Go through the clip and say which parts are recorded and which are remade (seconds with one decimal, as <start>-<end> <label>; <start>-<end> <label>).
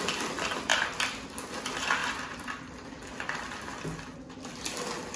0.0-5.2 recorded